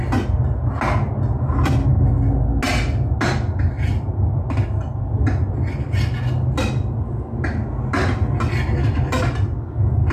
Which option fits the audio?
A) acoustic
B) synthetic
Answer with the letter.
A